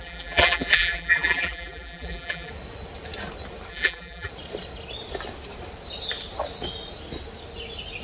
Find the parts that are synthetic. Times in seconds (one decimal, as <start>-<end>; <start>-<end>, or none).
0.0-2.5; 3.7-4.3